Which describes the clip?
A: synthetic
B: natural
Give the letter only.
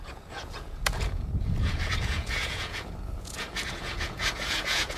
A